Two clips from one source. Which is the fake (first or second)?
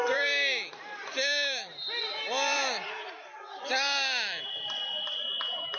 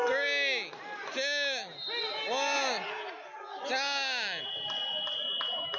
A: first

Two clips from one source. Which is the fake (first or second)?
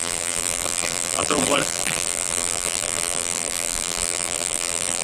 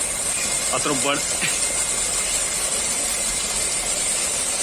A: first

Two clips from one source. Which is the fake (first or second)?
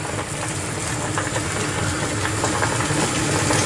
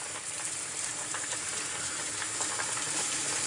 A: second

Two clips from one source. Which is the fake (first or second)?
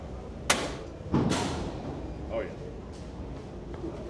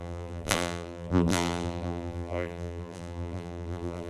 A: second